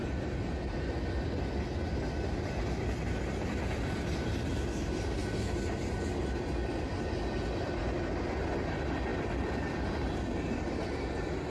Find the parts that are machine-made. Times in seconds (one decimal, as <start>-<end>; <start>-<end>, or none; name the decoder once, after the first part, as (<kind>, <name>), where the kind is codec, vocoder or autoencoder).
none